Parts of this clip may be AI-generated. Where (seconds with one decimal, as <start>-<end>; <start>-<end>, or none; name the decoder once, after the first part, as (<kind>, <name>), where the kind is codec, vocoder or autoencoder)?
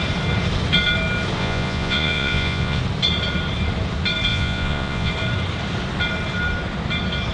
1.4-2.8 (vocoder, Vocos); 4.3-5.1